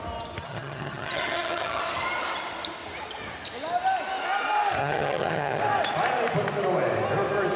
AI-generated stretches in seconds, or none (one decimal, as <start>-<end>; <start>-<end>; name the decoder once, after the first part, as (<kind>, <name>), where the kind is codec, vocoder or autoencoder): 0.4-1.8 (vocoder, HiFi-GAN); 4.8-5.6